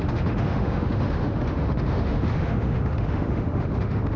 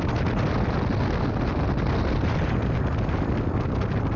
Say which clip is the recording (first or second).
second